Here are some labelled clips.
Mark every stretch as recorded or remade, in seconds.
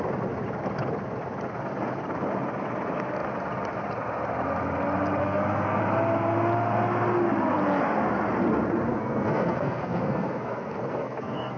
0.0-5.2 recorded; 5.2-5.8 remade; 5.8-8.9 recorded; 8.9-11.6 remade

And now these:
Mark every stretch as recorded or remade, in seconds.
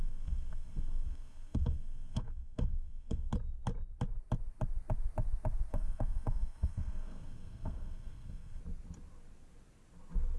0.0-3.3 remade; 3.3-5.7 recorded; 5.7-8.6 remade; 8.6-10.4 recorded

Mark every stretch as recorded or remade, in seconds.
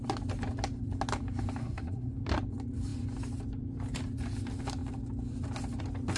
0.0-1.6 recorded; 1.6-2.1 remade; 2.1-6.2 recorded